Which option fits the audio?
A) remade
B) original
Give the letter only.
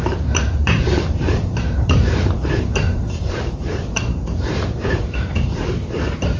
A